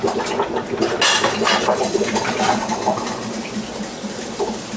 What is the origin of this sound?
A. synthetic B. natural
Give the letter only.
B